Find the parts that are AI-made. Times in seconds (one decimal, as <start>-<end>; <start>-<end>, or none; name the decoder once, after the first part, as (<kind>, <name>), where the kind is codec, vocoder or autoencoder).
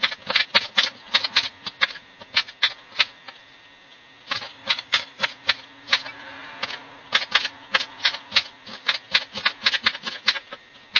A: 4.5-5.3 (codec, DAC)